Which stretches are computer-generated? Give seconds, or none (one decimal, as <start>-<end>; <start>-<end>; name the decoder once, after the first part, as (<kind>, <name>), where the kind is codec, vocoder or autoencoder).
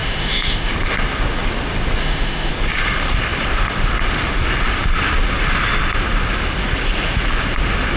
0.0-0.7 (autoencoder, DAC-VAE); 2.0-2.5